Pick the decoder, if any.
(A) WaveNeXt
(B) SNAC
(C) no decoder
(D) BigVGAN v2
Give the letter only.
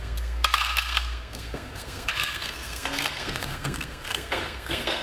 B